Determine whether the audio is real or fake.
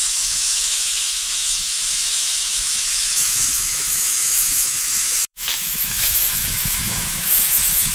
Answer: fake